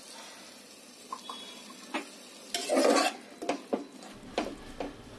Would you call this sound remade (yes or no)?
no